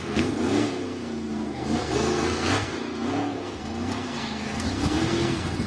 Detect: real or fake fake